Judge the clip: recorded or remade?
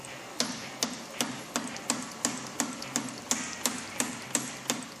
recorded